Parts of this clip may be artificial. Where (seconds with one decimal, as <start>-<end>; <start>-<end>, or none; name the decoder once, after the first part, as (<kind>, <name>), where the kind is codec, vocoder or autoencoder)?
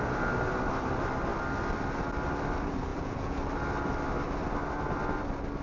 2.9-3.4 (vocoder, Vocos)